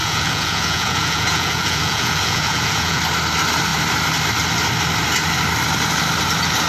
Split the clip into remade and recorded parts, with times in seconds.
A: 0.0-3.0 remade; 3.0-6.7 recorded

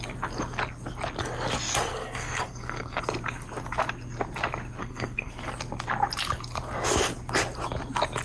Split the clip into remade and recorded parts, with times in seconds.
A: 0.0-1.9 recorded; 1.9-3.0 remade; 3.0-4.8 recorded; 4.8-5.3 remade; 5.3-8.2 recorded

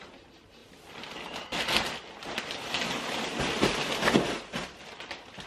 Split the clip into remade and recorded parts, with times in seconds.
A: 0.0-5.5 recorded

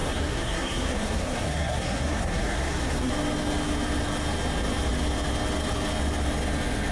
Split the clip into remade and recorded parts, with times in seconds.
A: 0.0-3.1 remade; 3.1-6.9 recorded

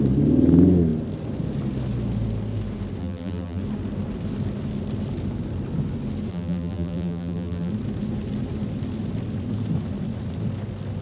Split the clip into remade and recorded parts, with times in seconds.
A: 0.0-3.0 recorded; 3.0-3.6 remade; 3.6-6.3 recorded; 6.3-7.7 remade; 7.7-11.0 recorded

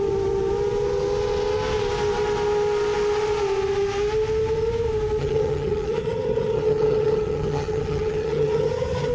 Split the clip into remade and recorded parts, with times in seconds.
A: 0.0-5.2 recorded; 5.2-9.1 remade

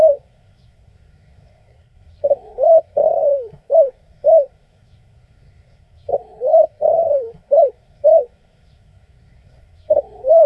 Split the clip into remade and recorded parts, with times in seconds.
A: 0.0-10.5 remade